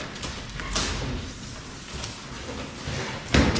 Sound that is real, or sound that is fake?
real